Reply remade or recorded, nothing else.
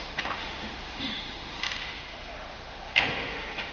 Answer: remade